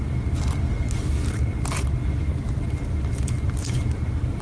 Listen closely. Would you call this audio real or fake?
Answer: real